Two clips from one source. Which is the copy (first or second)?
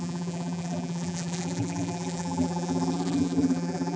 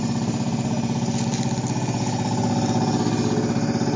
first